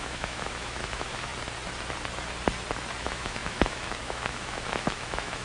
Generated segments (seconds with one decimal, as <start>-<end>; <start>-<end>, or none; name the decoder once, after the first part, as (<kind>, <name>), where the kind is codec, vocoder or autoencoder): 0.0-1.3 (autoencoder, DAC-VAE); 3.0-5.4